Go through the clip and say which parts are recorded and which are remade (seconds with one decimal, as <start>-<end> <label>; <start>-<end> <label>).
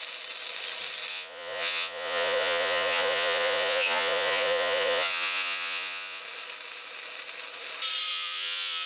0.0-1.1 recorded; 1.1-6.2 remade; 6.2-8.1 recorded; 8.1-8.9 remade